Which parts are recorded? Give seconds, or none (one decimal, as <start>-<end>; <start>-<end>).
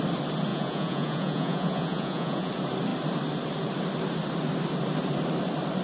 0.0-0.5; 2.5-5.8